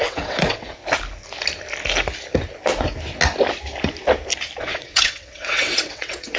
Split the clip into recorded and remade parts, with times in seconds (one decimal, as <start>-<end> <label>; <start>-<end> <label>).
0.0-0.8 remade; 0.8-4.6 recorded; 4.6-6.4 remade